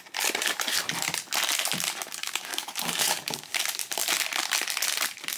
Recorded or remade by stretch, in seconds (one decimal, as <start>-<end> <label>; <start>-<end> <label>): 0.0-2.2 recorded; 2.2-3.6 remade; 3.6-5.4 recorded